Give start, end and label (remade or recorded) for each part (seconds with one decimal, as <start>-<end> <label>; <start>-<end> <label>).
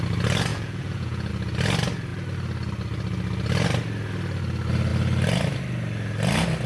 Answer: 0.0-0.5 recorded; 0.5-1.3 remade; 1.3-6.7 recorded